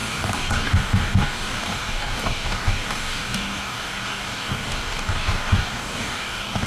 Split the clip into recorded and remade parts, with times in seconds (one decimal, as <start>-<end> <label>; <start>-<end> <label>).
0.0-6.7 remade